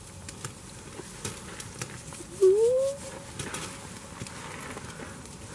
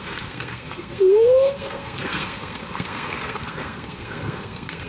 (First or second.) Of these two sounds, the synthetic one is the second